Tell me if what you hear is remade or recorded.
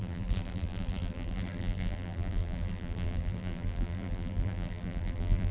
remade